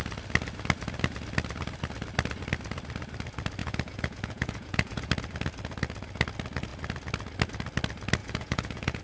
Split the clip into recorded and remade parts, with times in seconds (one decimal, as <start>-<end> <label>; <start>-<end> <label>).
0.0-3.6 recorded; 3.6-5.1 remade; 5.1-8.2 recorded; 8.2-9.0 remade